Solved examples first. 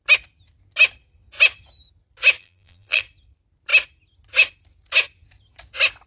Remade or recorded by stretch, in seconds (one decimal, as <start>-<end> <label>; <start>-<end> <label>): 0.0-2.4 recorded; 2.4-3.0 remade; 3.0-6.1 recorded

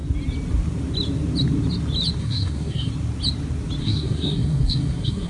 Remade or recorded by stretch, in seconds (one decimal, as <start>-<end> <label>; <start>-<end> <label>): 0.0-2.2 recorded; 2.2-2.9 remade; 2.9-3.8 recorded; 3.8-5.3 remade

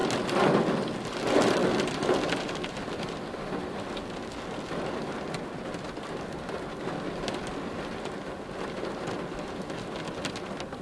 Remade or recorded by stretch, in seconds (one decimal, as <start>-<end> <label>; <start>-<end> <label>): 0.0-10.8 recorded

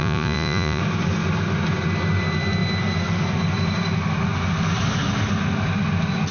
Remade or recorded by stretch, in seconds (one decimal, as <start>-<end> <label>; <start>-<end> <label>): 0.0-0.8 remade; 0.8-6.3 recorded

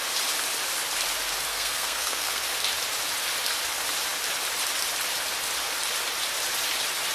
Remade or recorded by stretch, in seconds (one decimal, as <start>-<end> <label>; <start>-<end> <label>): 0.0-1.5 recorded; 1.5-2.4 remade; 2.4-7.1 recorded